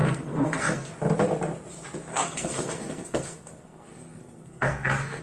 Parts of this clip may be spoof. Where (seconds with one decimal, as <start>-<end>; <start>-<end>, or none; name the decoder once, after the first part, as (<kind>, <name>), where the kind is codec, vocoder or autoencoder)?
0.0-0.9 (codec, SNAC); 2.1-5.2